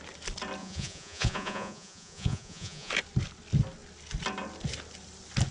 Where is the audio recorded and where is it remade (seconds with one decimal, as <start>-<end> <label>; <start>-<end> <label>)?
0.0-0.6 recorded; 0.6-2.9 remade; 2.9-5.5 recorded